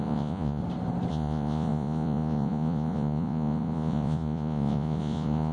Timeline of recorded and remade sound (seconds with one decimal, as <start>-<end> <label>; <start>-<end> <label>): 0.0-0.6 remade; 0.6-1.1 recorded; 1.1-5.5 remade